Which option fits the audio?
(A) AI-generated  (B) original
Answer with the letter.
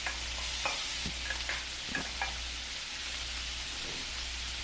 B